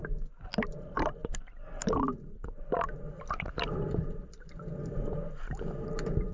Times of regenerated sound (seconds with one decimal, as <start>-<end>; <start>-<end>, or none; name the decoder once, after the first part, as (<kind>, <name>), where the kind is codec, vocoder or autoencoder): none